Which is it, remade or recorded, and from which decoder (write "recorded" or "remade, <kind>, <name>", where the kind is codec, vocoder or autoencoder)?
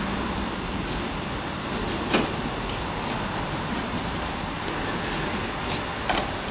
recorded